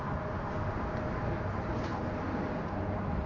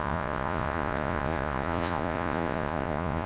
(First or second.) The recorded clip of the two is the first